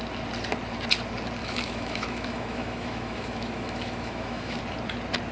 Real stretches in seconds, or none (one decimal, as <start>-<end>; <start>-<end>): 0.0-1.4; 4.6-5.3